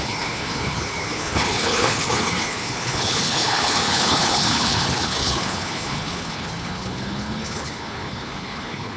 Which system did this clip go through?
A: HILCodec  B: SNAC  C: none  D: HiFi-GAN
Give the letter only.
A